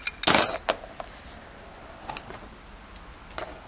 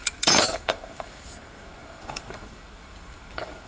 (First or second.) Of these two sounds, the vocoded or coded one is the second